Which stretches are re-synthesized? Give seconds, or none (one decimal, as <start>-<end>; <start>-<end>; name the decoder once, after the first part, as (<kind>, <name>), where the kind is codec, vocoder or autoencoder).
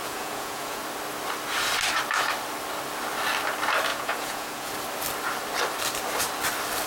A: 0.0-0.8 (vocoder, Vocos); 3.9-4.7